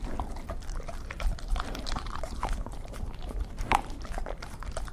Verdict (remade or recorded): remade